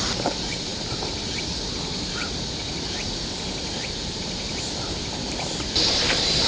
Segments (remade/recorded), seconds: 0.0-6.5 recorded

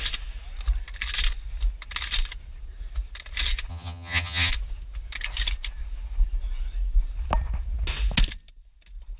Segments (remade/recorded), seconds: 0.0-3.7 recorded; 3.7-4.5 remade; 4.5-9.2 recorded

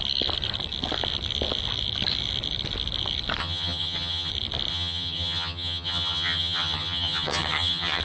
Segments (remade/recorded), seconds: 0.0-3.4 recorded; 3.4-4.3 remade; 4.3-4.7 recorded; 4.7-8.0 remade

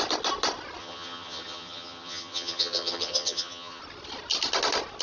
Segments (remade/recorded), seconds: 0.0-0.8 recorded; 0.8-3.8 remade; 3.8-5.0 recorded

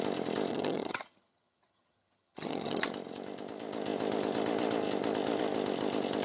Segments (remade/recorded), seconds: 0.0-0.5 recorded; 0.5-2.9 remade; 2.9-6.2 recorded

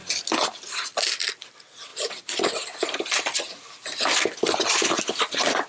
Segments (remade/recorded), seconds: 0.0-5.7 recorded

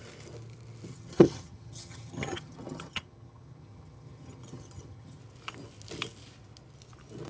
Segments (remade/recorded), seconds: 0.0-0.9 recorded; 0.9-5.2 remade; 5.2-7.3 recorded

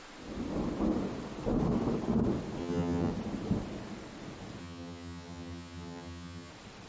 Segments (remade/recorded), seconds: 0.0-2.6 recorded; 2.6-3.1 remade; 3.1-4.6 recorded; 4.6-6.5 remade; 6.5-6.9 recorded